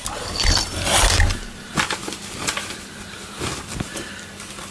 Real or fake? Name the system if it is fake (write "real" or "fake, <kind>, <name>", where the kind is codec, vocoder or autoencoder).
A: real